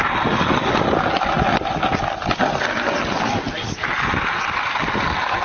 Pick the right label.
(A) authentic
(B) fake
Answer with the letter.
A